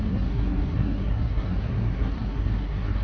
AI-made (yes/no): yes